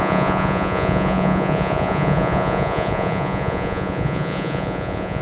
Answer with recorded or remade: remade